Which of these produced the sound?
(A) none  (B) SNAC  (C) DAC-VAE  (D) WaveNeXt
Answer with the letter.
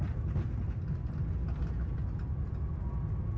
A